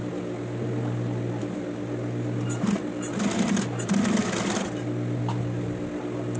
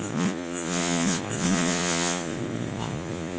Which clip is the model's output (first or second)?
second